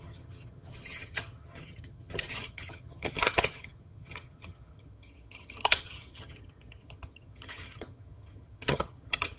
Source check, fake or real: fake